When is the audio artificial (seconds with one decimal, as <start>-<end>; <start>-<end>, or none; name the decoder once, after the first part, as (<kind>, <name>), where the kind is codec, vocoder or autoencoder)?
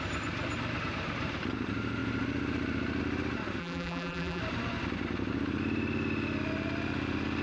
3.6-4.4 (vocoder, BigVGAN v2)